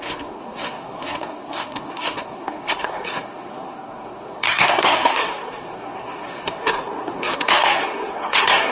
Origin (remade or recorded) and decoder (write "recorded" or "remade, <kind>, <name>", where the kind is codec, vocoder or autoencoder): remade, codec, SNAC